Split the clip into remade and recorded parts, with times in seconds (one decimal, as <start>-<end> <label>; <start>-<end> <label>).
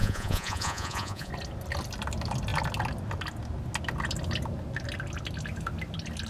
0.0-1.3 remade; 1.3-6.3 recorded